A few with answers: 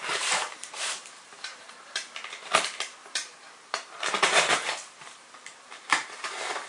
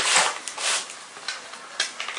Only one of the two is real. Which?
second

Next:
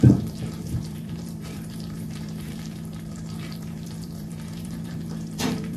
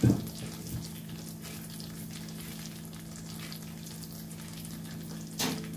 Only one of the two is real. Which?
second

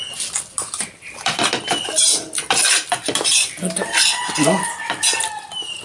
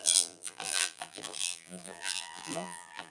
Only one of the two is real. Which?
first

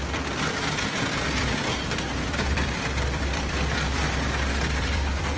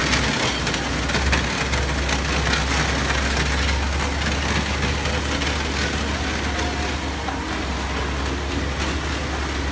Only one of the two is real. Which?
second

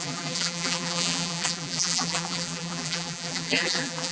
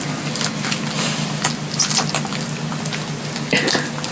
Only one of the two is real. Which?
second